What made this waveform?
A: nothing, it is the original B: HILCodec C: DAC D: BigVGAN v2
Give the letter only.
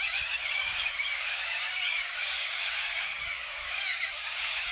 C